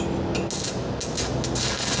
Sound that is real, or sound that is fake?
real